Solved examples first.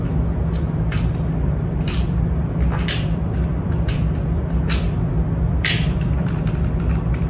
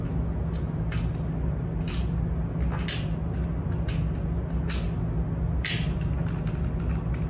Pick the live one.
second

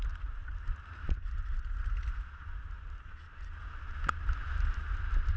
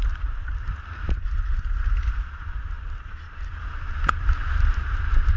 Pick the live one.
first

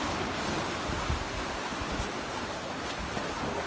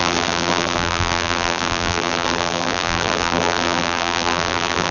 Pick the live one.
first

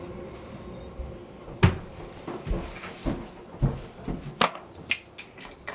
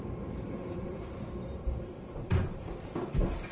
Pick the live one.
first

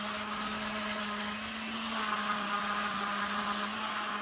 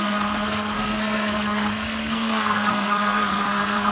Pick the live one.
first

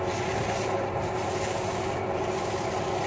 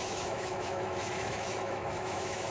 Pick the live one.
first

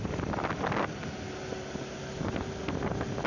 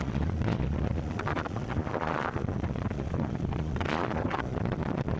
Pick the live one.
first